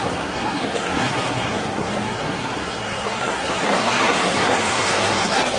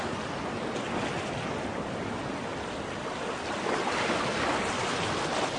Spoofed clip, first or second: first